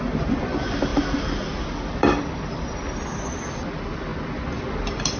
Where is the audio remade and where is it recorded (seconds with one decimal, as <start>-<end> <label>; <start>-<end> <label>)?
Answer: 0.0-4.1 remade; 4.1-5.2 recorded